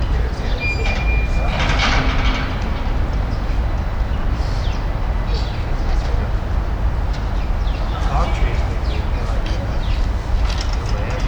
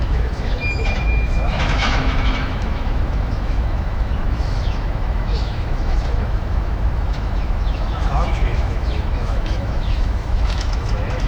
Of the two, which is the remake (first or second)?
second